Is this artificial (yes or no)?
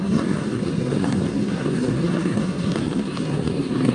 yes